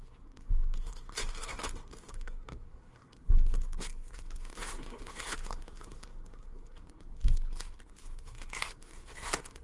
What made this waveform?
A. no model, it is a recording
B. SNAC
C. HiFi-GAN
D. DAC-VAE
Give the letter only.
B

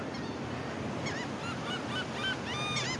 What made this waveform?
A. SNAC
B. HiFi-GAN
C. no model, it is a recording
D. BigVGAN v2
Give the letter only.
C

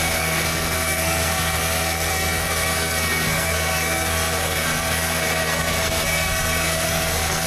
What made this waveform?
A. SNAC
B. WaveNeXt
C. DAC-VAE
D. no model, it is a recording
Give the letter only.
A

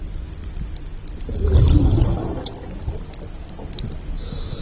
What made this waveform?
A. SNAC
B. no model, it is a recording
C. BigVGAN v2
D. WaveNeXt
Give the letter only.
B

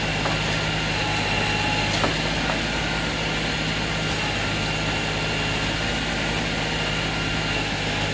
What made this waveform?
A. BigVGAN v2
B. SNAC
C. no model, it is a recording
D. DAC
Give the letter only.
C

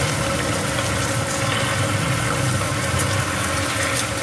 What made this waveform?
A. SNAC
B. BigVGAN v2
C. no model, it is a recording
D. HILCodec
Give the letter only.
C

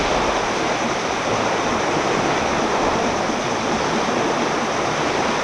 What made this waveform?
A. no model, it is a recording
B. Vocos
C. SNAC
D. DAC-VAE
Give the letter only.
A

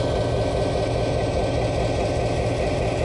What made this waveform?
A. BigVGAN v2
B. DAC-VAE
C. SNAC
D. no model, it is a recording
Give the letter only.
D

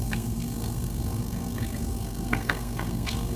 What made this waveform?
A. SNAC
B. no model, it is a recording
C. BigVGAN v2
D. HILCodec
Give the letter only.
A